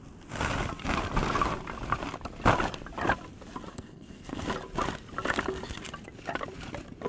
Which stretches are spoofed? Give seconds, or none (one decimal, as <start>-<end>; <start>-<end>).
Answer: 3.7-4.4